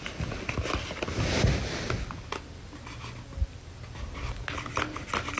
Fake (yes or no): no